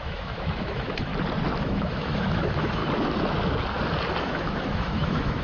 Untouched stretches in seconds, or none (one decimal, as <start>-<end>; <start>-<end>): 1.1-1.6; 2.8-4.2